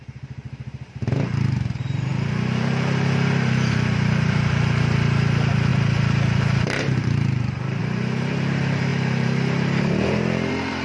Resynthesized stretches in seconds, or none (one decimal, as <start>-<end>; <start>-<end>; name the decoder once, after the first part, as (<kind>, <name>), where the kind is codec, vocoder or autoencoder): 0.0-10.8 (vocoder, BigVGAN v2)